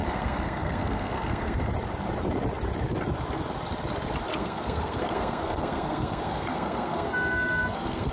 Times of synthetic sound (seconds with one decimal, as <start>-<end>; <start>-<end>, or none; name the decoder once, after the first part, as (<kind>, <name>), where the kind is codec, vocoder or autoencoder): 0.0-1.7 (codec, SNAC); 4.3-8.1